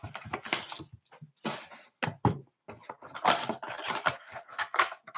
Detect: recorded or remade recorded